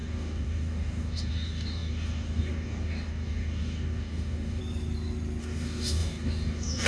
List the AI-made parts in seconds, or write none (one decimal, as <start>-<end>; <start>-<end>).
0.0-4.6; 5.4-6.9